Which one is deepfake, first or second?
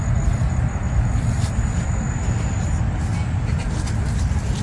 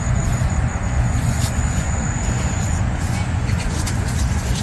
second